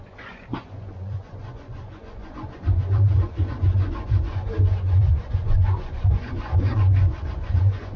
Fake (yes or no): yes